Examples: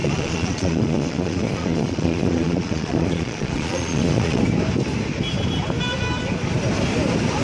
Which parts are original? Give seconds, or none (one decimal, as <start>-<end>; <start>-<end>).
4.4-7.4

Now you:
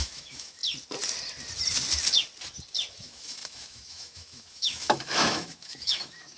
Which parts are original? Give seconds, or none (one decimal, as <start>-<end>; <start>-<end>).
0.6-2.9

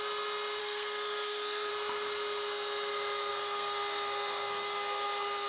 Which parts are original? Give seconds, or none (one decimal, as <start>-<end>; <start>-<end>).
0.0-0.6; 1.7-3.3

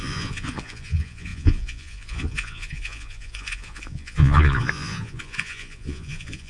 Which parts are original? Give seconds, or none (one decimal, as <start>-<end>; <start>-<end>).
none